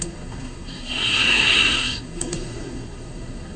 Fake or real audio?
fake